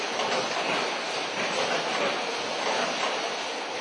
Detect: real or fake real